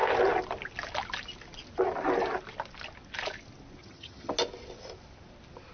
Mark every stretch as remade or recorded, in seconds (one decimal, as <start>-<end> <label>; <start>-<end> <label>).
0.0-3.8 recorded; 3.8-4.3 remade; 4.3-5.7 recorded